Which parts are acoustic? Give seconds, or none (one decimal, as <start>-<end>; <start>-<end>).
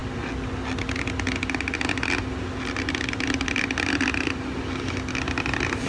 0.0-5.9